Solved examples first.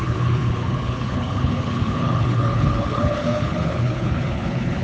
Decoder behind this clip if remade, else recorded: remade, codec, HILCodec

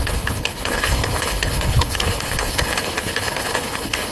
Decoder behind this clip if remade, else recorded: remade, codec, HILCodec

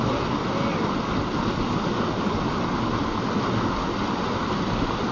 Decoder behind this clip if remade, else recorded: recorded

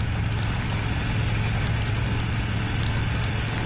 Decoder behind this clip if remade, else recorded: recorded